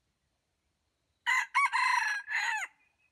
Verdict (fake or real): real